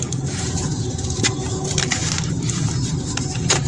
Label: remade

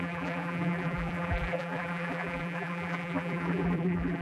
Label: remade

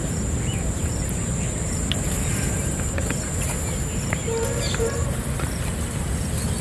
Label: recorded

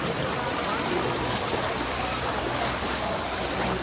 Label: remade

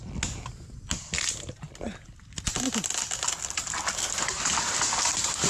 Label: recorded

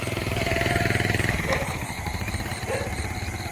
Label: remade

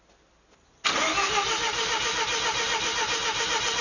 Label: recorded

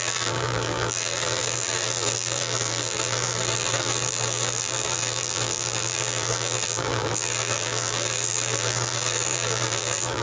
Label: remade